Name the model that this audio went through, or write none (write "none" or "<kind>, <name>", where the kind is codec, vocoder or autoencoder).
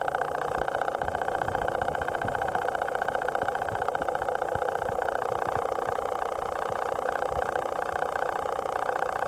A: none